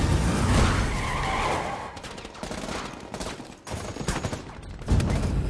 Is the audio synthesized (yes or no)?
no